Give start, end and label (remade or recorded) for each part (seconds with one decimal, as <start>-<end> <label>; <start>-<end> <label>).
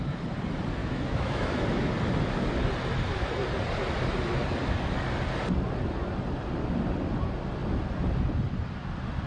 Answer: 0.0-0.8 recorded; 0.8-1.9 remade; 1.9-9.3 recorded